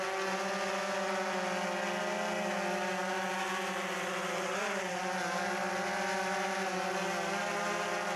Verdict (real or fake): real